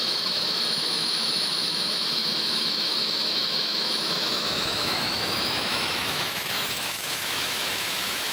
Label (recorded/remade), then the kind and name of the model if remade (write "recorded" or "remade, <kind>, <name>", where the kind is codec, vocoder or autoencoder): remade, autoencoder, DAC-VAE